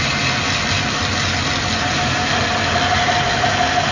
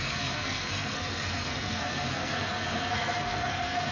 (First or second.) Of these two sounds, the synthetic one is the second